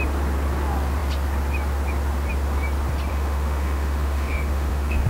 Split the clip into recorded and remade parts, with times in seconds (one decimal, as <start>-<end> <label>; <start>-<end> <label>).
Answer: 0.0-3.1 recorded; 3.1-5.1 remade

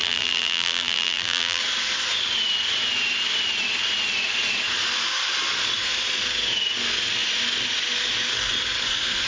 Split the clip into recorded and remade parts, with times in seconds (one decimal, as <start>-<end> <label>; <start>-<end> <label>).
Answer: 0.0-1.6 remade; 1.6-9.3 recorded